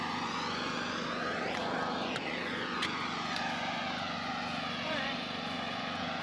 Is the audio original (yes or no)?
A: no